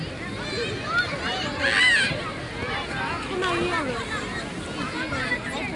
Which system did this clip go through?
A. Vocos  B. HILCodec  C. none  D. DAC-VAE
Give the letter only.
C